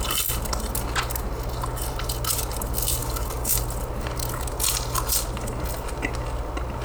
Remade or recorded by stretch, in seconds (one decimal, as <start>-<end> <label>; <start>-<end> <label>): 0.0-3.0 recorded; 3.0-3.6 remade; 3.6-6.8 recorded